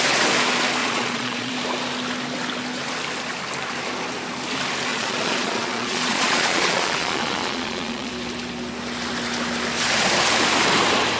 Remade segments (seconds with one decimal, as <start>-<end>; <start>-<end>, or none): 0.8-1.5; 4.9-8.1